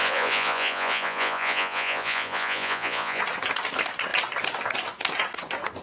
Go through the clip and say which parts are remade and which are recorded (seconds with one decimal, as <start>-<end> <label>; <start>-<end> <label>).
0.0-3.2 remade; 3.2-5.8 recorded